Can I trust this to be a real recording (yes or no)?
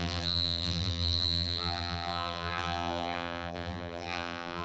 no